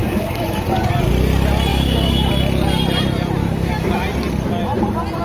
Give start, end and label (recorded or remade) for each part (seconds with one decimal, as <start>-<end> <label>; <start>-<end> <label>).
0.0-0.9 remade; 0.9-1.7 recorded; 1.7-2.3 remade; 2.3-3.4 recorded; 3.4-3.9 remade; 3.9-5.2 recorded